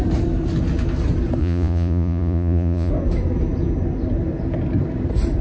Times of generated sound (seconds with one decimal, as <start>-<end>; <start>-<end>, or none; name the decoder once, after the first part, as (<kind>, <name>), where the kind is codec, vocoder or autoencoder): 1.4-2.9 (vocoder, Vocos)